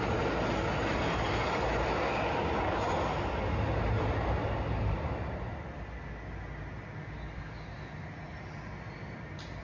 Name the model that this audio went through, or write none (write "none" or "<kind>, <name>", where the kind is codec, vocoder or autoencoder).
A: none